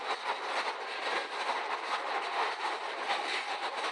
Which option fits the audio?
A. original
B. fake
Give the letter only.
A